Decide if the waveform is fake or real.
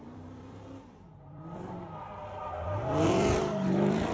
fake